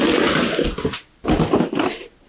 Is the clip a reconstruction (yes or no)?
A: no